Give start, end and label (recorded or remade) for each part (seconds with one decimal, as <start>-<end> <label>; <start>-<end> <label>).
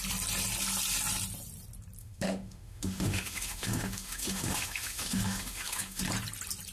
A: 0.0-2.0 recorded; 2.0-6.0 remade; 6.0-6.7 recorded